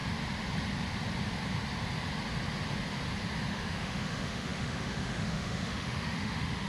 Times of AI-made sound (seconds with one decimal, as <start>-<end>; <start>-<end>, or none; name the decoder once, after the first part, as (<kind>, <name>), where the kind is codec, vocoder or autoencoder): 3.5-6.7 (autoencoder, DAC-VAE)